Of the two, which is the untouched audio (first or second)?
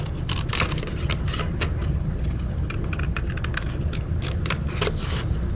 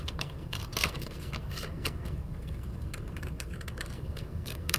first